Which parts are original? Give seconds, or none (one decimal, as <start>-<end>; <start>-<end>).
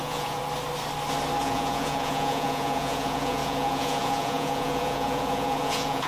0.4-1.4